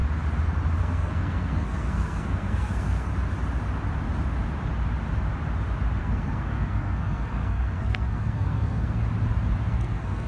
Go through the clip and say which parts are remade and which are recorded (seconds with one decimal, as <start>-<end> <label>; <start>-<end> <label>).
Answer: 0.0-0.8 recorded; 0.8-3.1 remade; 3.1-6.0 recorded; 6.0-9.0 remade; 9.0-9.7 recorded; 9.7-10.3 remade